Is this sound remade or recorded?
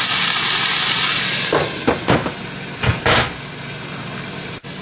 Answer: recorded